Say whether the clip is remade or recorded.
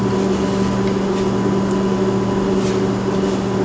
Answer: recorded